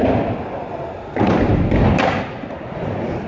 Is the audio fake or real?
real